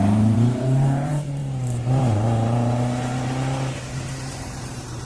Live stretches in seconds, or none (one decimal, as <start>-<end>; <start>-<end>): none